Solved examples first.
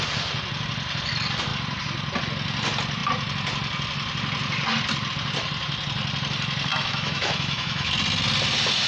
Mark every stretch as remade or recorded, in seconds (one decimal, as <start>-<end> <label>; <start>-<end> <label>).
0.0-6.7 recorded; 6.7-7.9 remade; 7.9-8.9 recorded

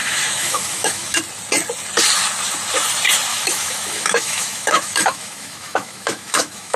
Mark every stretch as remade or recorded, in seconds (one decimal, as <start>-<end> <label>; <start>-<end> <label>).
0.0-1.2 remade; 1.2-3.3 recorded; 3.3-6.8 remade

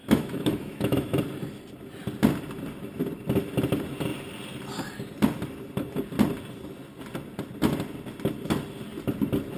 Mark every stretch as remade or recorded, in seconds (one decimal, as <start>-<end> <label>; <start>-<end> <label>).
0.0-1.2 remade; 1.2-9.6 recorded

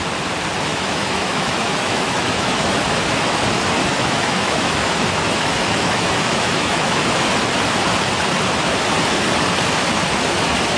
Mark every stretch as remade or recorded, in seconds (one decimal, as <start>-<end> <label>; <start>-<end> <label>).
0.0-0.7 recorded; 0.7-2.8 remade; 2.8-3.8 recorded; 3.8-7.3 remade; 7.3-10.8 recorded

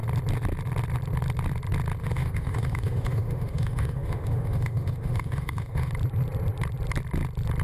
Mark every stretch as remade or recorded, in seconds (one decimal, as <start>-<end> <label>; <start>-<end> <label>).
0.0-2.0 recorded; 2.0-5.9 remade; 5.9-7.6 recorded